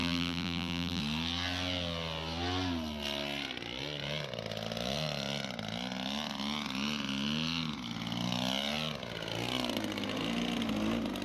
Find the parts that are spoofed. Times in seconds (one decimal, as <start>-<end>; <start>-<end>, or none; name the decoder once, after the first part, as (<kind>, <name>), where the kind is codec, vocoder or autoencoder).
0.0-1.0 (vocoder, BigVGAN v2)